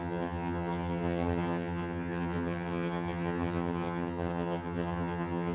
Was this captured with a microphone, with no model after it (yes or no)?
no